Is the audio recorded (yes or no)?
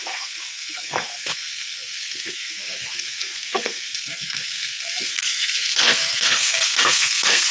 no